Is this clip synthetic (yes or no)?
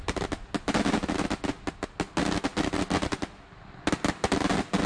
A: no